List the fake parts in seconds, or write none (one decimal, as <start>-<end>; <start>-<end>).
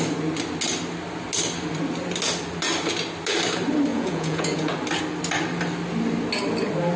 3.9-4.7